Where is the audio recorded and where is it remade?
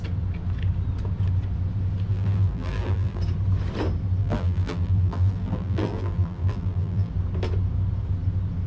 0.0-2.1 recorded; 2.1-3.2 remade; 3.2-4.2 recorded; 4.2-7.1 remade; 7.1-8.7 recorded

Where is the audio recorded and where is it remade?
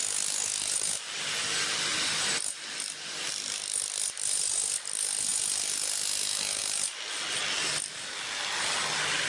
0.0-9.3 recorded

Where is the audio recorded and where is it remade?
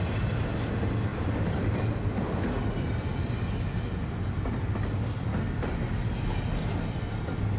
0.0-1.1 recorded; 1.1-2.2 remade; 2.2-7.6 recorded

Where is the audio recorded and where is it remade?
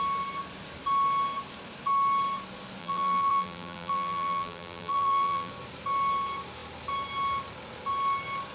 0.0-2.8 recorded; 2.8-5.5 remade; 5.5-8.5 recorded